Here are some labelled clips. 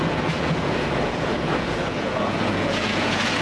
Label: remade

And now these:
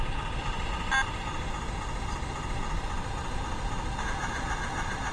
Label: recorded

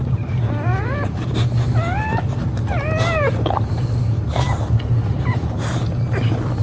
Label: recorded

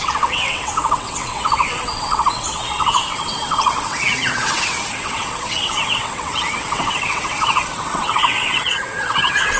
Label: remade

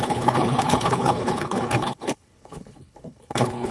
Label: remade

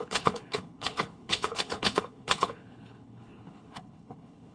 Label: remade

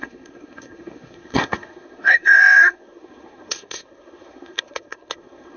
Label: remade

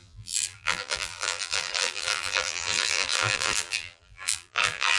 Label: remade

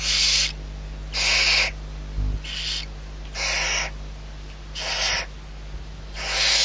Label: recorded